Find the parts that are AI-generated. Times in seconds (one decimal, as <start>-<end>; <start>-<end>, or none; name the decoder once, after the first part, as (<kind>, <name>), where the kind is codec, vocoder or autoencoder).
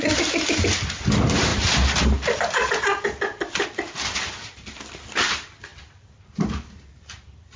none